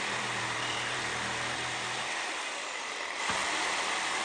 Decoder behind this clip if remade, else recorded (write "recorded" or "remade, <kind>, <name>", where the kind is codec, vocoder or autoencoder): remade, vocoder, BigVGAN v2